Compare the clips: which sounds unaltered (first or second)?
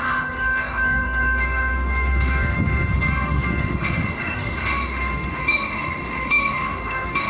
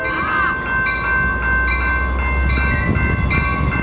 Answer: second